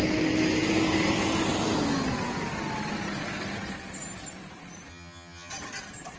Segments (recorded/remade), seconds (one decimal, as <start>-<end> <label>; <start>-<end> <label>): 0.0-4.9 recorded; 4.9-5.5 remade; 5.5-6.2 recorded